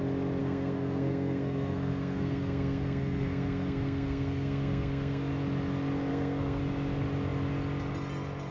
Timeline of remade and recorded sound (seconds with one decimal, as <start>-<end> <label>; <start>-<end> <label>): 0.0-0.4 recorded; 0.4-5.3 remade; 5.3-6.1 recorded; 6.1-6.6 remade; 6.6-8.5 recorded